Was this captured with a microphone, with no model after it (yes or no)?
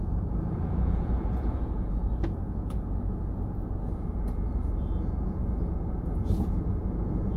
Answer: no